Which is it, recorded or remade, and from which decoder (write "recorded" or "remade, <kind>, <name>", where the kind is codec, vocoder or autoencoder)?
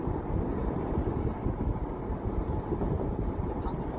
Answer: recorded